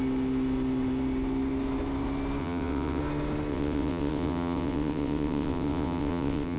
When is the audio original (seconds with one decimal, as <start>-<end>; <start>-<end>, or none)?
0.0-2.4; 3.0-3.5